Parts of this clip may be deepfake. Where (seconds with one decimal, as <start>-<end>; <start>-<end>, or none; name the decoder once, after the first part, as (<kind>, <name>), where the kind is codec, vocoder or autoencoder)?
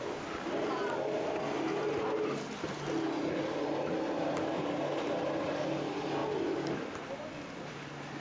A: none